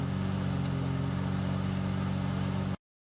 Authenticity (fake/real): real